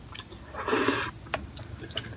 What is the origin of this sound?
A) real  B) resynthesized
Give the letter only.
A